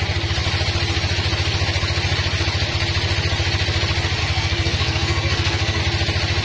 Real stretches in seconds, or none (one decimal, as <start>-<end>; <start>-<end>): 0.0-4.2; 5.8-6.4